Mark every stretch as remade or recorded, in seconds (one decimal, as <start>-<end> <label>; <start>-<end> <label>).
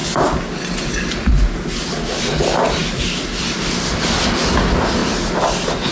0.0-5.9 recorded